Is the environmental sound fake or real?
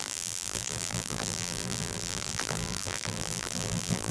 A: fake